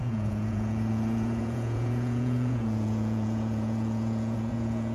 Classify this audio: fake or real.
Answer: fake